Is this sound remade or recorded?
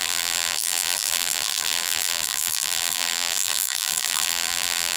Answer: remade